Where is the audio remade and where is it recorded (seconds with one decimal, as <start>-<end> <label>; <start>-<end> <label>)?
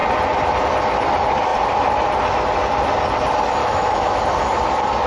0.0-3.6 recorded; 3.6-4.2 remade; 4.2-5.1 recorded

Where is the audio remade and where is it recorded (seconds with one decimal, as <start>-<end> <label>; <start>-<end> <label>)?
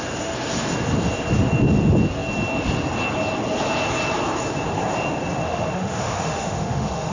0.0-5.4 recorded; 5.4-7.1 remade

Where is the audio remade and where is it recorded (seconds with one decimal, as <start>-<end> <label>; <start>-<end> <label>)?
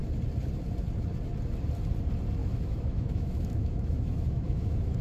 0.0-2.4 recorded; 2.4-5.0 remade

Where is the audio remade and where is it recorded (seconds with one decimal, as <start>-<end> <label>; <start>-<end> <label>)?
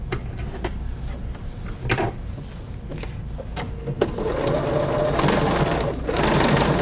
0.0-6.8 recorded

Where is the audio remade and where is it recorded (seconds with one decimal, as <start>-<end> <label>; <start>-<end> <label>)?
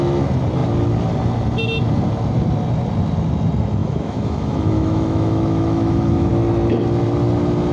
0.0-3.8 recorded; 3.8-6.3 remade; 6.3-7.7 recorded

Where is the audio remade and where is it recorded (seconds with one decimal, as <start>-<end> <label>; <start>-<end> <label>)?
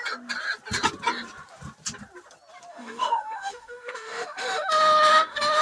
0.0-2.7 recorded; 2.7-5.6 remade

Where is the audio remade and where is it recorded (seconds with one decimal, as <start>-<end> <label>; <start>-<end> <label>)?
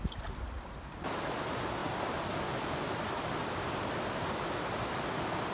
0.0-5.5 recorded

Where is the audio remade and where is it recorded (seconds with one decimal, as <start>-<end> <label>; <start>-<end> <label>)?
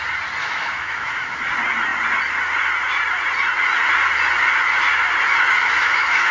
0.0-0.4 recorded; 0.4-1.4 remade; 1.4-5.6 recorded; 5.6-6.3 remade